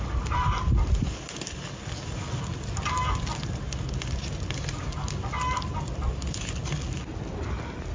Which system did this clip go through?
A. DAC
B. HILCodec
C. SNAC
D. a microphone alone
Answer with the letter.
D